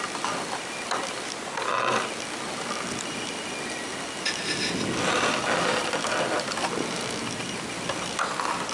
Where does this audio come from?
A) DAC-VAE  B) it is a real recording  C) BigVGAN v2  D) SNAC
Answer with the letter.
B